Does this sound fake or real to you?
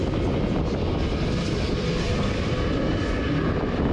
fake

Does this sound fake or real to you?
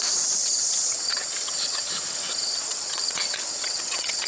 fake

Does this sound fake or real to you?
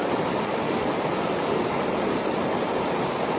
fake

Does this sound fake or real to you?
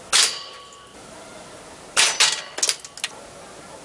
real